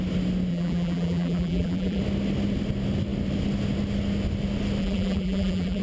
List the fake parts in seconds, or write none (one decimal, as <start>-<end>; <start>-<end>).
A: 0.5-2.0; 4.8-5.8